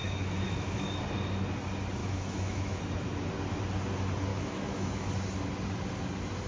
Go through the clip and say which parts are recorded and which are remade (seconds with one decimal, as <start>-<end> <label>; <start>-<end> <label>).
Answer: 0.0-1.0 remade; 1.0-2.0 recorded; 2.0-2.8 remade; 2.8-4.3 recorded; 4.3-5.1 remade; 5.1-6.5 recorded